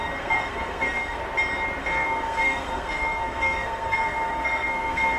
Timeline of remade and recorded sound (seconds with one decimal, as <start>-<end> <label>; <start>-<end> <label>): 0.0-1.2 remade; 1.2-1.8 recorded; 1.8-5.2 remade